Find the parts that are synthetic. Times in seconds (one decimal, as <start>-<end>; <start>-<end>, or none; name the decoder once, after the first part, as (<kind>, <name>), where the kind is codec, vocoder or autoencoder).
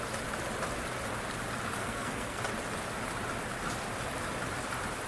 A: 1.8-2.4 (codec, SNAC)